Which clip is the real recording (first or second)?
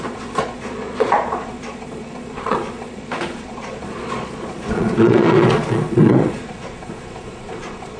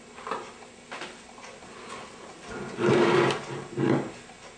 second